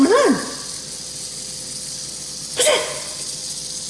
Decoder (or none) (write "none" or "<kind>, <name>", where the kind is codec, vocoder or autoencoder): none